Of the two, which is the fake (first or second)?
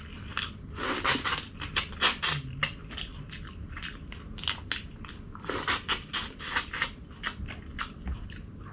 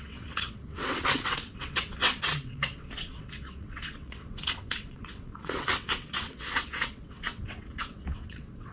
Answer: second